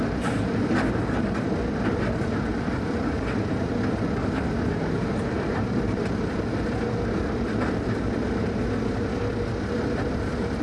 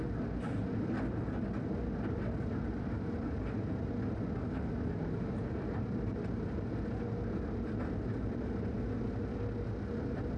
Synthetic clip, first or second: first